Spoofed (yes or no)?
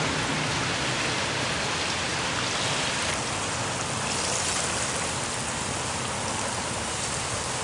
no